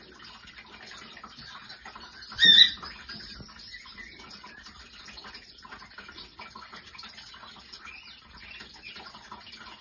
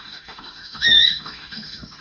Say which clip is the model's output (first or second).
second